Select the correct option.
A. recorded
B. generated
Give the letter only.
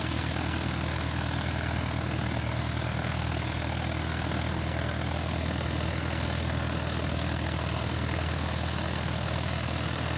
B